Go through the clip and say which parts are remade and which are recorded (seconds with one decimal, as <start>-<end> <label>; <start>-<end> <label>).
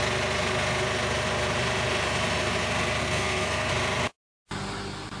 0.0-3.0 recorded; 3.0-3.7 remade; 3.7-5.2 recorded